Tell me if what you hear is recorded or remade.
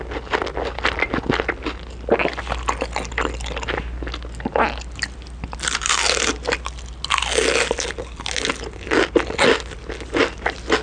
recorded